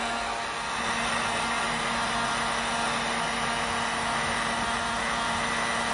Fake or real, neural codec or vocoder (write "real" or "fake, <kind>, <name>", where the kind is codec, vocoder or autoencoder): real